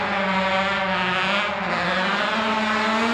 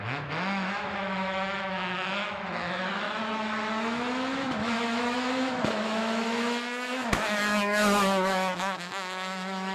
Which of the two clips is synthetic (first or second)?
second